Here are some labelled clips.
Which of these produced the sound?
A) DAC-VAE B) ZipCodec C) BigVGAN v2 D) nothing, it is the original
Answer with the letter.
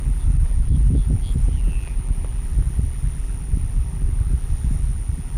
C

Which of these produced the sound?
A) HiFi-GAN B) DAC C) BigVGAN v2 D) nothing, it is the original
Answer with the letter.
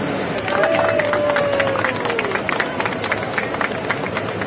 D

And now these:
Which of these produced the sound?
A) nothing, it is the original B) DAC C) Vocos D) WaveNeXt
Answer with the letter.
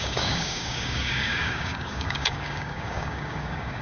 B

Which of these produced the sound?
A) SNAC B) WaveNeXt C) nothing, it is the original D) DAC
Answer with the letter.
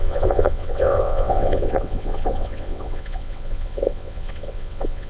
B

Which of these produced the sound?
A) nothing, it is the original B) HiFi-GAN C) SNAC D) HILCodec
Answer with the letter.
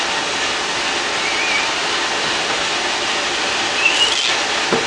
A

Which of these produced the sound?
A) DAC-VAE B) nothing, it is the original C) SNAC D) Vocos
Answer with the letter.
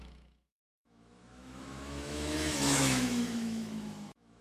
A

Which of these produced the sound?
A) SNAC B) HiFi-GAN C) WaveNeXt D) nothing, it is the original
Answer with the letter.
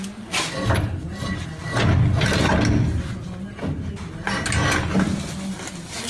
D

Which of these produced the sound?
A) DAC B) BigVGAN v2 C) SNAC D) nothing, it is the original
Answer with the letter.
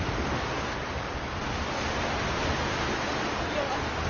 D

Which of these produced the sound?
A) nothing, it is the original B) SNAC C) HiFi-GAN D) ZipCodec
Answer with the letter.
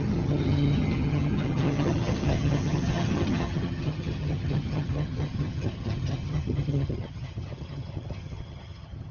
C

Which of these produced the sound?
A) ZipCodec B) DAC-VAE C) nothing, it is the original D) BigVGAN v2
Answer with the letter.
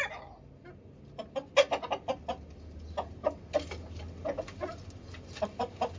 C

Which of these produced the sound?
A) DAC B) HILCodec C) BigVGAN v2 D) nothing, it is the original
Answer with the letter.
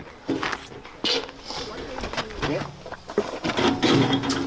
D